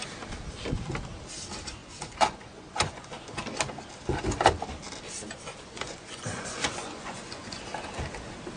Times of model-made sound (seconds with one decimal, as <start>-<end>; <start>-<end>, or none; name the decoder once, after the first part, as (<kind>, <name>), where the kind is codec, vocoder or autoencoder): 1.8-3.4 (vocoder, Vocos); 5.5-7.6